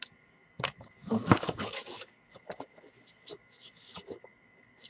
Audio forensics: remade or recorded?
remade